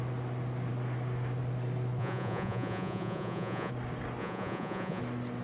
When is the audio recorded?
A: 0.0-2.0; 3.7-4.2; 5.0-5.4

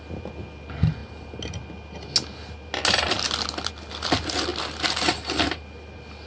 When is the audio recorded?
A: 0.0-6.3

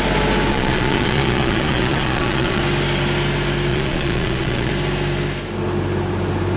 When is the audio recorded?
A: 0.0-0.5; 2.6-3.7; 4.7-6.6

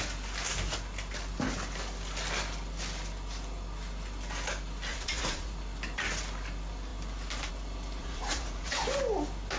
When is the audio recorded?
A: 0.0-4.9; 5.6-8.0; 8.8-9.6